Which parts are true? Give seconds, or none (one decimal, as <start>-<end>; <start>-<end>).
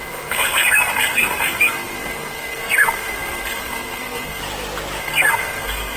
4.4-5.0